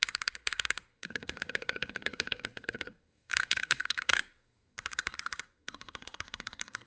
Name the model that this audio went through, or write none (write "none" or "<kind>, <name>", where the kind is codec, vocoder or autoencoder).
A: codec, SNAC